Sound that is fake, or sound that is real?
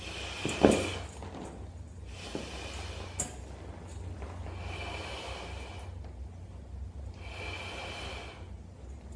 real